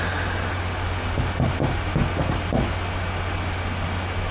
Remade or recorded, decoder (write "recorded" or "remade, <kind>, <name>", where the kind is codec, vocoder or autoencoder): recorded